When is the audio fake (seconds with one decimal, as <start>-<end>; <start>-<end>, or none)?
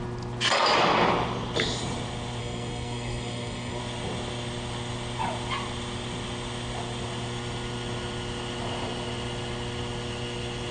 2.4-3.8